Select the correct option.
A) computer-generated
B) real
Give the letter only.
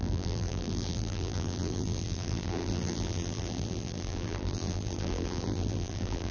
A